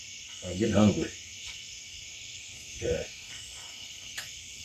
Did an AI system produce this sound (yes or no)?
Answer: yes